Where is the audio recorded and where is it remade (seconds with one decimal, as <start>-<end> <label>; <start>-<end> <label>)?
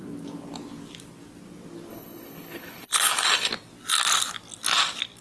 0.0-1.9 recorded; 1.9-3.5 remade; 3.5-5.2 recorded